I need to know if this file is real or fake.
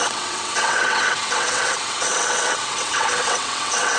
fake